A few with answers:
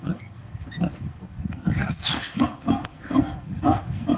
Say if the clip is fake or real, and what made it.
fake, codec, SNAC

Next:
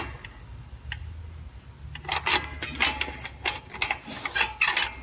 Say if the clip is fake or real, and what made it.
real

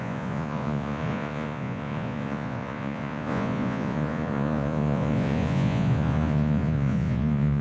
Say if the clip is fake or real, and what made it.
fake, vocoder, Vocos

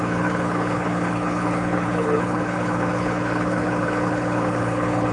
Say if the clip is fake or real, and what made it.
fake, codec, HILCodec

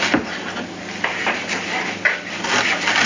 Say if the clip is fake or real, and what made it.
real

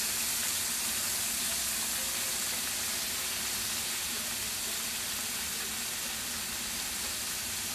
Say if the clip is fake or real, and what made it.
real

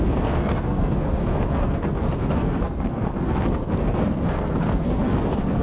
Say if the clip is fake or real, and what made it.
fake, codec, SNAC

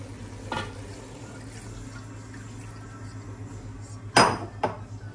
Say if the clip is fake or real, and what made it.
real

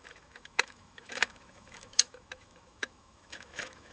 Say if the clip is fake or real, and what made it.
fake, autoencoder, DAC-VAE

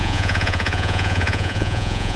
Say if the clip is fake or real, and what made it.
fake, vocoder, Vocos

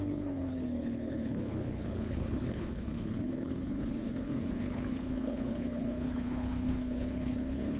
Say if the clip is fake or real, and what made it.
fake, codec, HILCodec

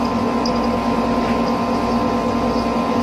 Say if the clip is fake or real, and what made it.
real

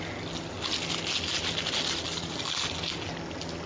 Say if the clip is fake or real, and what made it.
real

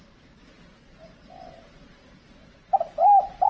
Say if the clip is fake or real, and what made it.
real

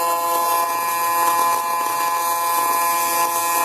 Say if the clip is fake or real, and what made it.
real